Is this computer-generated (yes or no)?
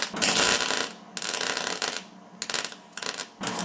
no